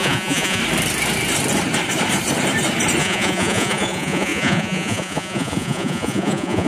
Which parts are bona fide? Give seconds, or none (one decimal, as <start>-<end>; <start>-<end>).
0.6-3.0